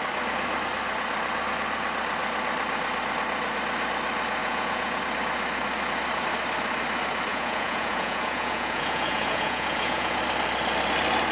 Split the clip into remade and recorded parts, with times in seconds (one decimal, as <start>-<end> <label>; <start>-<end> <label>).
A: 0.0-4.4 recorded; 4.4-5.0 remade; 5.0-7.3 recorded; 7.3-10.2 remade; 10.2-11.3 recorded